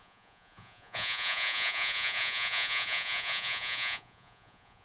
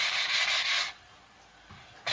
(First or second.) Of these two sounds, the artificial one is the first